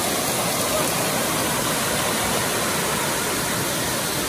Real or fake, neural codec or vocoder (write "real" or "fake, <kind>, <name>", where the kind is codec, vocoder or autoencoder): real